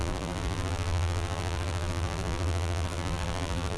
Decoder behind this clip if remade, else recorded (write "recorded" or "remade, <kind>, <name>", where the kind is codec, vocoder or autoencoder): remade, vocoder, BigVGAN v2